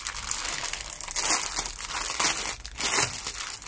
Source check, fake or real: real